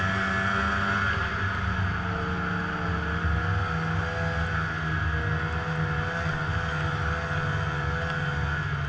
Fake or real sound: real